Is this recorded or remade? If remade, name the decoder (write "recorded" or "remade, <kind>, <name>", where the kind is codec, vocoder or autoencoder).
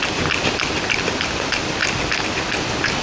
recorded